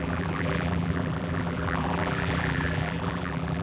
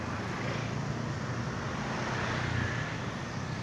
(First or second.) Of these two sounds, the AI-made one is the first